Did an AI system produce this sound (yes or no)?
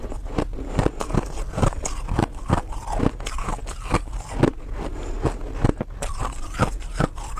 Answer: no